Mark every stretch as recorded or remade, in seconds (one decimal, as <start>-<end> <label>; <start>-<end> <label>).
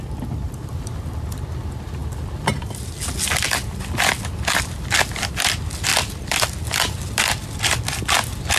0.0-2.0 recorded; 2.0-2.9 remade; 2.9-8.6 recorded